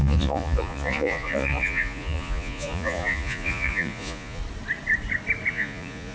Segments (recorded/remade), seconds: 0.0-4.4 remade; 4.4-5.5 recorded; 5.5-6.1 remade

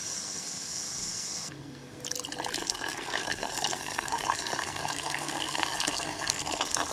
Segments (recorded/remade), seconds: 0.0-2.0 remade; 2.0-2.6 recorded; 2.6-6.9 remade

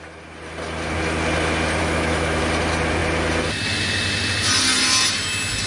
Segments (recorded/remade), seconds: 0.0-1.8 recorded; 1.8-2.4 remade; 2.4-5.7 recorded

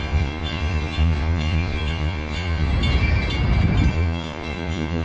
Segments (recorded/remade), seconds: 0.0-2.7 remade; 2.7-3.9 recorded; 3.9-5.0 remade

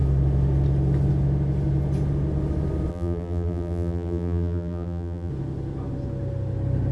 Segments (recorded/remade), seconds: 0.0-2.9 recorded; 2.9-5.3 remade; 5.3-6.9 recorded

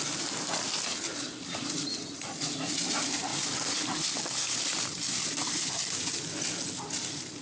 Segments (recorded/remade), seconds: 0.0-7.4 recorded

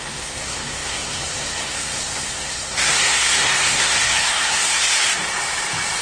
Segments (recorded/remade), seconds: 0.0-5.1 remade; 5.1-6.0 recorded